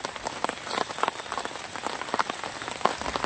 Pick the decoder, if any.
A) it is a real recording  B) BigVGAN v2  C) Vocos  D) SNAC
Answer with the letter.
A